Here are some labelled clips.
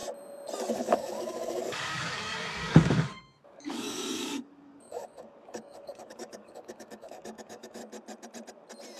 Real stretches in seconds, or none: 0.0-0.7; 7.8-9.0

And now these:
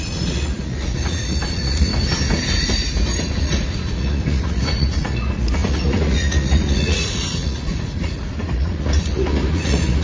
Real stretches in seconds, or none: 1.9-3.3

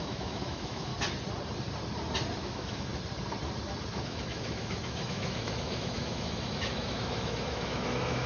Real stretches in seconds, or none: 0.9-2.4; 2.9-3.9

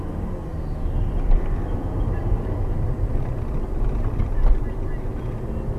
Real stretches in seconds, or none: 0.0-5.8

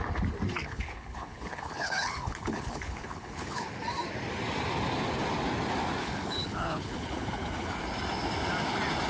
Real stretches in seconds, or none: 0.0-0.6; 3.7-6.0; 7.7-9.1